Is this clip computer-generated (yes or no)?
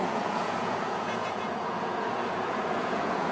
yes